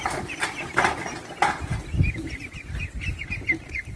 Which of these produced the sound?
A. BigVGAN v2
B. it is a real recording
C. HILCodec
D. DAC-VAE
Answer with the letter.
B